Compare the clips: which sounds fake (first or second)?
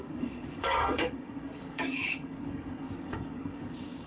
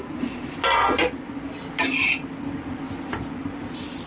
first